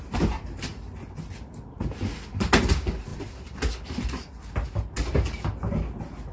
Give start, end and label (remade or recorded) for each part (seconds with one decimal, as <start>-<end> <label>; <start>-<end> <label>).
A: 0.0-6.3 recorded